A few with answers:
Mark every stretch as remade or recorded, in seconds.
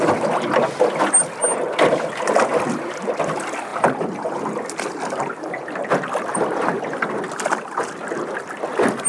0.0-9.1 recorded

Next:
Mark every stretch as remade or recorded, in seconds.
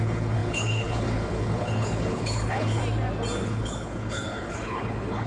0.0-2.8 remade; 2.8-3.4 recorded; 3.4-5.3 remade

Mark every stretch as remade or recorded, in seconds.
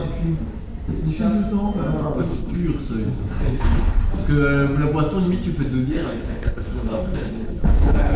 0.0-2.0 recorded; 2.0-2.6 remade; 2.6-3.4 recorded; 3.4-4.0 remade; 4.0-5.9 recorded; 5.9-8.2 remade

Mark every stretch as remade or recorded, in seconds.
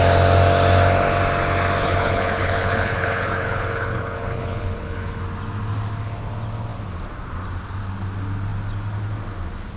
0.0-1.8 recorded; 1.8-5.2 remade; 5.2-9.8 recorded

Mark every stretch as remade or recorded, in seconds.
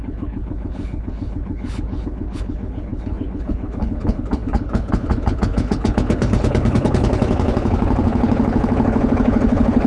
0.0-9.9 remade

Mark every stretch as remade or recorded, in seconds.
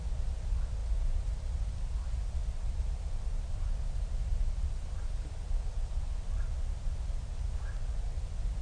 0.0-8.6 recorded